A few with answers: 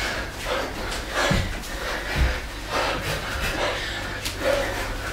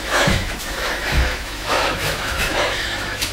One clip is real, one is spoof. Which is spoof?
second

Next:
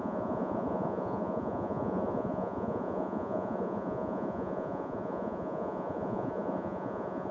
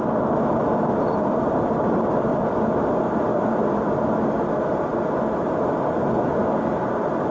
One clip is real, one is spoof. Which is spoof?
first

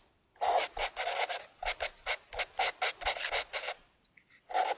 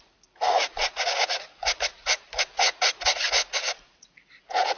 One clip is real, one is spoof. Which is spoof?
second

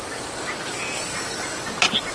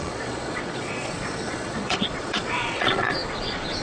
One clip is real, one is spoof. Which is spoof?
second